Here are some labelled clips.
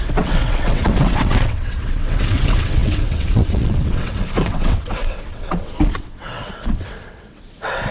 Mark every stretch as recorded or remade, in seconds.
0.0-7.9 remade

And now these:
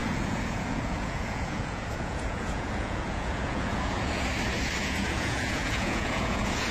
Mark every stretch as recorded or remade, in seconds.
0.0-4.3 remade; 4.3-4.8 recorded; 4.8-6.7 remade

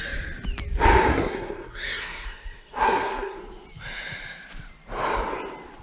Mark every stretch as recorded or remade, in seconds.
0.0-1.1 recorded; 1.1-3.4 remade; 3.4-5.8 recorded

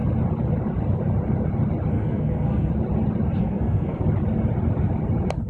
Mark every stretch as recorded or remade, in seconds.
0.0-1.9 recorded; 1.9-2.7 remade; 2.7-3.4 recorded; 3.4-4.0 remade; 4.0-5.5 recorded

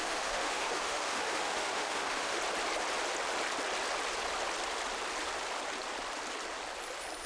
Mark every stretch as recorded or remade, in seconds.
0.0-2.4 remade; 2.4-7.3 recorded